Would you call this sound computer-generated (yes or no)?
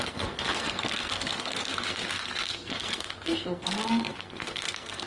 yes